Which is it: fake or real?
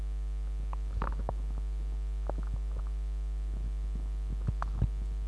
real